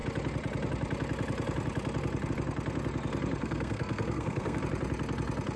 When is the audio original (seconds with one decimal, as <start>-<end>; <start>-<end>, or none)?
0.0-3.4; 4.6-5.6